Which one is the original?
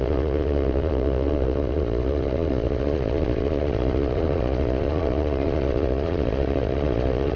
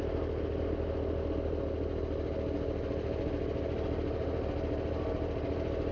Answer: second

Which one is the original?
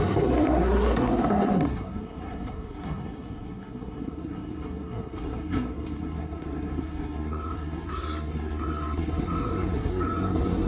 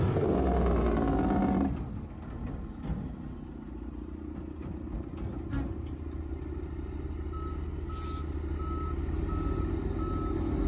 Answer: second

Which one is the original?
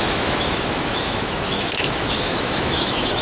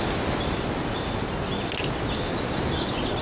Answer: second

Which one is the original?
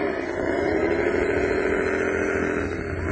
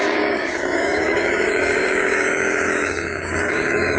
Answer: first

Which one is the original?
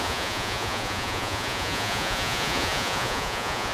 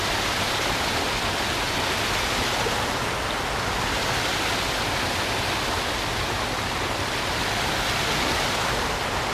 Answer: second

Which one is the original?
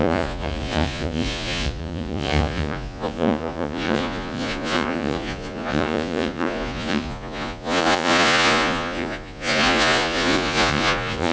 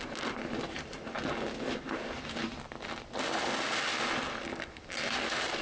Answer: second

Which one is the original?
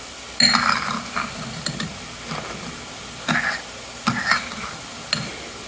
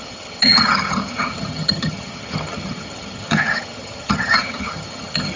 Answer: first